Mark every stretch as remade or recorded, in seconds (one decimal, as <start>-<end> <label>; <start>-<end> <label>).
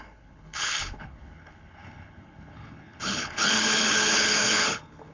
0.0-5.1 remade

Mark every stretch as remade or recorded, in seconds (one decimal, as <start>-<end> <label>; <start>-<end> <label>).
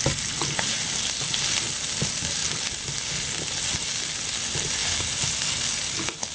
0.0-6.3 recorded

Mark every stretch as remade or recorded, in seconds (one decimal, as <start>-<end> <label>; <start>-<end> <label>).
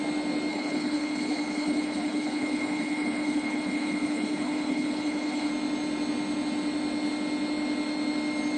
0.0-0.5 recorded; 0.5-5.5 remade; 5.5-8.6 recorded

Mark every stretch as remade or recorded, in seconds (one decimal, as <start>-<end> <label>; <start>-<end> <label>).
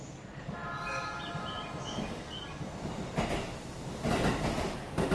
0.0-5.1 recorded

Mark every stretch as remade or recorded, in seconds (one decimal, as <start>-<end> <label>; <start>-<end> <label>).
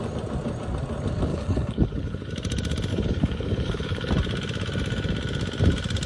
0.0-1.3 recorded; 1.3-2.3 remade; 2.3-2.9 recorded; 2.9-4.1 remade; 4.1-6.1 recorded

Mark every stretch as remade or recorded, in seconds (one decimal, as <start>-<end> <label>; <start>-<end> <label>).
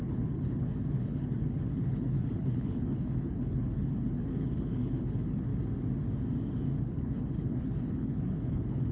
0.0-5.5 remade; 5.5-6.8 recorded; 6.8-8.9 remade